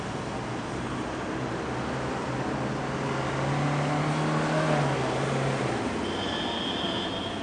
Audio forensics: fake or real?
real